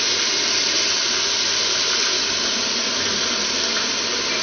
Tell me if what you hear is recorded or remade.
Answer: recorded